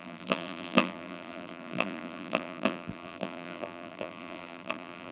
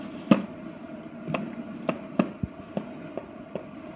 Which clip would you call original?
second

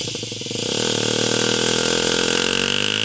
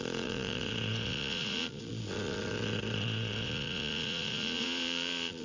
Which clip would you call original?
first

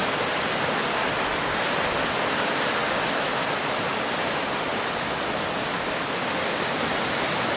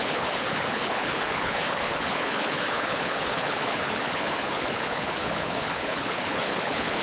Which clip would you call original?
first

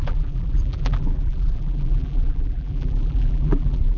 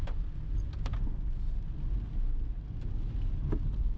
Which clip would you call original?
second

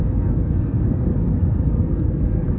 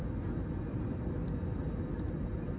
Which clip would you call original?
second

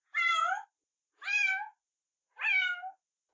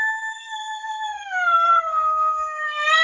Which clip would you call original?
first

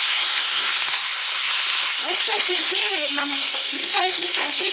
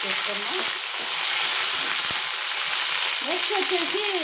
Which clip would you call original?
second